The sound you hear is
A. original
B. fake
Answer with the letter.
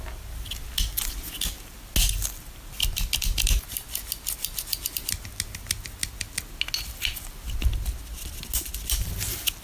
A